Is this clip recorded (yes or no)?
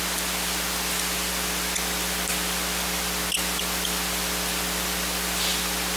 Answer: yes